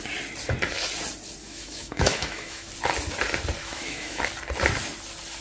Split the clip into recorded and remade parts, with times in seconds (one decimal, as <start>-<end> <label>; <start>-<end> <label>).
0.0-1.4 recorded; 1.4-2.7 remade; 2.7-3.6 recorded; 3.6-4.2 remade; 4.2-5.4 recorded